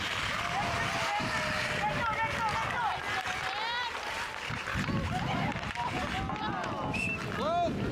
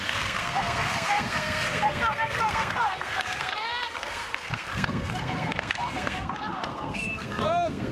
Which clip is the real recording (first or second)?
first